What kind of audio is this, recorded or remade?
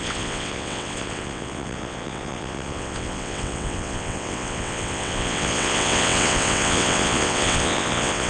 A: remade